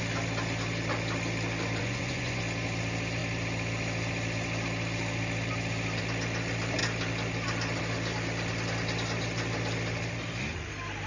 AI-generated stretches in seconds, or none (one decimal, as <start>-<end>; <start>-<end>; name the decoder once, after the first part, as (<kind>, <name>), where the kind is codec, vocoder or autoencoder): 1.8-2.4 (vocoder, Vocos)

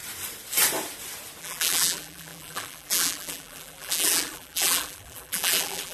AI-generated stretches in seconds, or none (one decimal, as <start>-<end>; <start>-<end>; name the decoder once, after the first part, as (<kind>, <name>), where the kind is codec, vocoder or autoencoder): 1.4-5.9 (vocoder, BigVGAN v2)

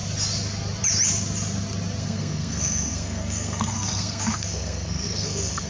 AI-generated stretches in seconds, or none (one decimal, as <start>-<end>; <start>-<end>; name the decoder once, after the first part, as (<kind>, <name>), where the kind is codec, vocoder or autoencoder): 2.0-5.7 (codec, SNAC)

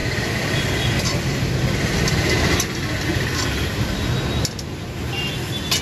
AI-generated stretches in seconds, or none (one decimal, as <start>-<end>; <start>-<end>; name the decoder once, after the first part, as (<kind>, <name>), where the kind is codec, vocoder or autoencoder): 3.1-3.9 (vocoder, BigVGAN v2)

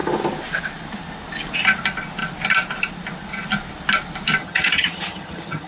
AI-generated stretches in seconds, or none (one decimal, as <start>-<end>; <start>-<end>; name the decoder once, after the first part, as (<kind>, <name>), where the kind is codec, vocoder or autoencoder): 4.4-5.7 (vocoder, HiFi-GAN)

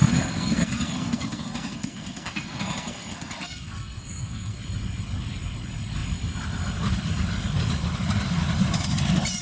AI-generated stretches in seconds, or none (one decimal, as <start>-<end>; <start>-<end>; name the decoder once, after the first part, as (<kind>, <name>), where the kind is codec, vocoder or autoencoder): 0.0-4.6 (codec, SNAC)

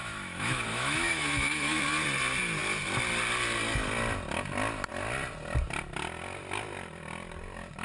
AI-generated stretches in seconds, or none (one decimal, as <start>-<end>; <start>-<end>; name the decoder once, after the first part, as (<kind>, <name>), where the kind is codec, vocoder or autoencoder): 0.0-1.8 (autoencoder, DAC-VAE)

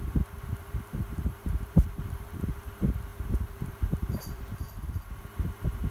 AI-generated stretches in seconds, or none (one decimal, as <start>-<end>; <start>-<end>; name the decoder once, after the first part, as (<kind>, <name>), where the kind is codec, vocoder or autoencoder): 0.0-5.9 (vocoder, BigVGAN v2)